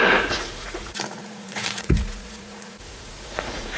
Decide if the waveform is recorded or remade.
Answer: remade